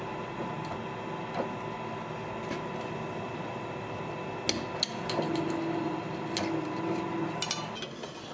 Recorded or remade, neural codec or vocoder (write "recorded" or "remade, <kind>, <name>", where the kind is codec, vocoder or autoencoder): recorded